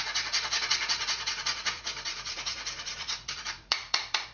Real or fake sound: fake